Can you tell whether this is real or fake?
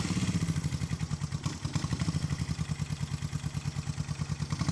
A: real